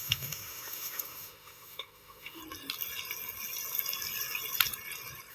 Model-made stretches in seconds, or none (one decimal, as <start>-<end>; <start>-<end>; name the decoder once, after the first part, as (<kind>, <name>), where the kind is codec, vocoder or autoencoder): 0.0-2.4 (autoencoder, DAC-VAE)